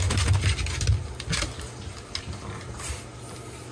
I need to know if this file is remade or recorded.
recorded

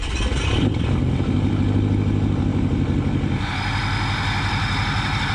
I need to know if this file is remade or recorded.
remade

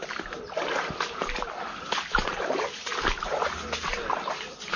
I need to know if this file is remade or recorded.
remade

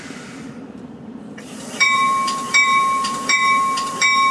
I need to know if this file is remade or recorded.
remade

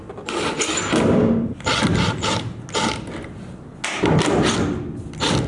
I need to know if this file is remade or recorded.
recorded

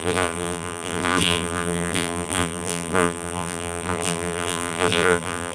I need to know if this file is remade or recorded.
remade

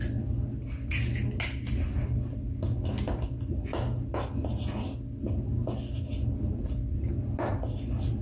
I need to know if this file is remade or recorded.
recorded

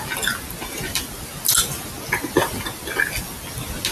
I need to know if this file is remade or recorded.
recorded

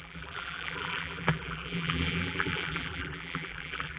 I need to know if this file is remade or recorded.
remade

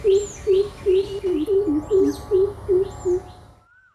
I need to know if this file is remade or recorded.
recorded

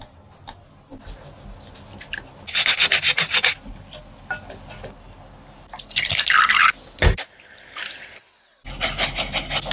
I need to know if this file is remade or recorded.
recorded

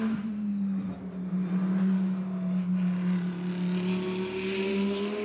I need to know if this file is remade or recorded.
recorded